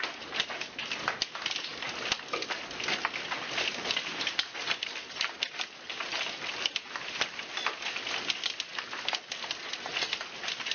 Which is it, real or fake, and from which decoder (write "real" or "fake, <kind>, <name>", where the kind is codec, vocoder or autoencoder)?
real